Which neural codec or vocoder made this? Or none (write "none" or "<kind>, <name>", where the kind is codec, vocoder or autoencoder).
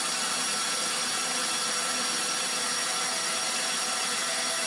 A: none